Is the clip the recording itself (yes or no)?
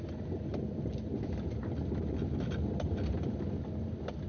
yes